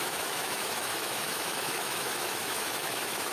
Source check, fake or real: fake